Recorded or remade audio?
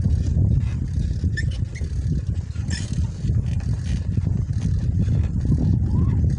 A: recorded